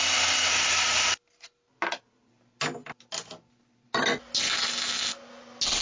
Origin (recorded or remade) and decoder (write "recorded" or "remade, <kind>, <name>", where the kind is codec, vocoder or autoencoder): recorded